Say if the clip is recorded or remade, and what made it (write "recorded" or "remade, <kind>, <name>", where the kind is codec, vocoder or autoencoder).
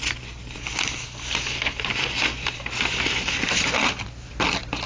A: recorded